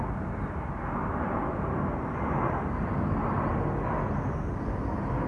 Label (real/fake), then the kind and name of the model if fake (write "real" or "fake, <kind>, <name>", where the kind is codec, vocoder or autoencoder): real